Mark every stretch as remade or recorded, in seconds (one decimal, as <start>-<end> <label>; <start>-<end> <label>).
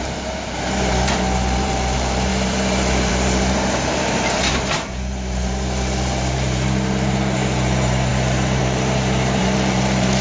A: 0.0-10.2 remade